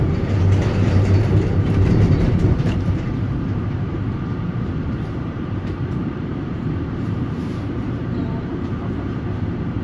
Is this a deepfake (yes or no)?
yes